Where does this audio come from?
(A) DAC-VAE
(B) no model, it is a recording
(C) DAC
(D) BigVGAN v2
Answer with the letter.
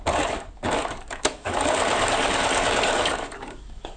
C